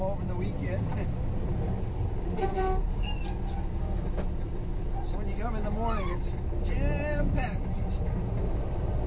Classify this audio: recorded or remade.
recorded